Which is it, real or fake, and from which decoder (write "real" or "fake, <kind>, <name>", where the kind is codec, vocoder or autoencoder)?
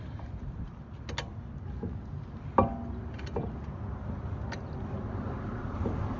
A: real